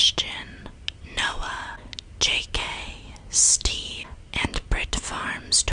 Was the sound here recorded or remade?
recorded